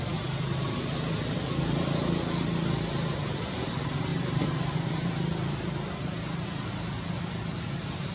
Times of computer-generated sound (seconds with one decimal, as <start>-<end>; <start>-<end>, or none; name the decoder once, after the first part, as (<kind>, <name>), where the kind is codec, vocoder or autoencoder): 4.1-5.7 (vocoder, BigVGAN v2)

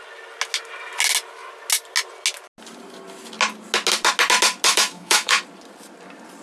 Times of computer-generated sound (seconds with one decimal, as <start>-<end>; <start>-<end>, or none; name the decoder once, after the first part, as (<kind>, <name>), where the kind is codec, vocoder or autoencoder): 4.7-5.4 (autoencoder, DAC-VAE)

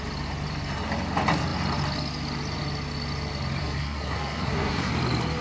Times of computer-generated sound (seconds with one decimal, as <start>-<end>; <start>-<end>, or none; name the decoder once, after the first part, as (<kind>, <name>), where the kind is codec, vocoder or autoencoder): 3.6-4.9 (codec, SNAC)

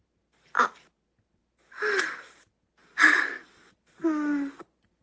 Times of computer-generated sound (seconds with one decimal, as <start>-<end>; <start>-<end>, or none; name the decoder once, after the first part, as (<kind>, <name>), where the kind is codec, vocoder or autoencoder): 0.0-1.4 (vocoder, BigVGAN v2); 2.0-2.8; 3.6-4.0; 4.6-5.0

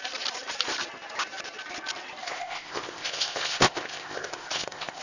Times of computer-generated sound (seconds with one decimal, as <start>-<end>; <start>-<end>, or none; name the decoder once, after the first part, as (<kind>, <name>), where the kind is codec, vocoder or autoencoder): 2.2-5.0 (codec, ZipCodec)

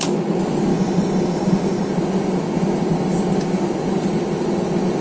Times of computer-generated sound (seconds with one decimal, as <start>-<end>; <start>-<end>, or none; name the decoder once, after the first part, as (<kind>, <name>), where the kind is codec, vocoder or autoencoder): 0.7-1.9 (codec, DAC)

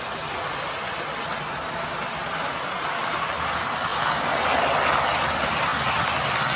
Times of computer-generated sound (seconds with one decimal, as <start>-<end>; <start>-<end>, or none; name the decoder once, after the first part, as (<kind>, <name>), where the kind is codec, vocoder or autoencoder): none

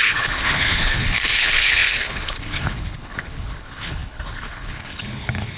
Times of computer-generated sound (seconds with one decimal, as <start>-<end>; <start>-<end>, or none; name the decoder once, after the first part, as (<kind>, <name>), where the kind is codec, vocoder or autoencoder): 0.0-5.6 (codec, HILCodec)